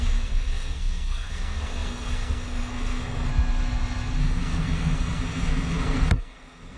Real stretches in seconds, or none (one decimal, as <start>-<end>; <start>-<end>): 3.3-4.2